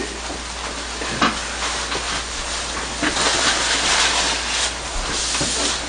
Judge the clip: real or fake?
real